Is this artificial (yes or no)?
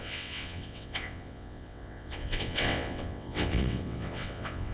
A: yes